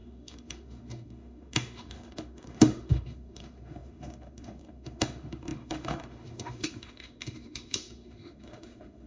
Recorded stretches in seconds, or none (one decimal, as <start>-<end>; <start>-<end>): none